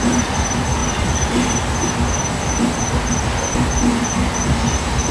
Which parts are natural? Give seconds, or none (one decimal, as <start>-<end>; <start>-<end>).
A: 0.0-5.1